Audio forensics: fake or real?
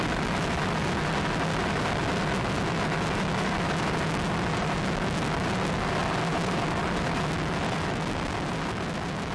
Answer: real